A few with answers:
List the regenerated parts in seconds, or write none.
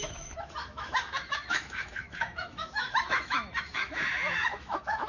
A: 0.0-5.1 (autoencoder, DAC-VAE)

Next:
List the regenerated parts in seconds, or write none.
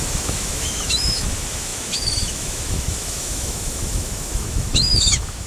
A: 0.0-5.5 (autoencoder, DAC-VAE)